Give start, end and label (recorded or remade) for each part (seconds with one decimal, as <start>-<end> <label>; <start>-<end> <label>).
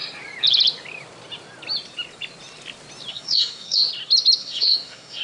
0.0-3.1 recorded; 3.1-3.9 remade; 3.9-4.4 recorded; 4.4-5.2 remade